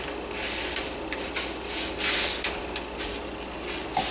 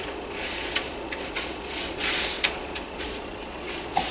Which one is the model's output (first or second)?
second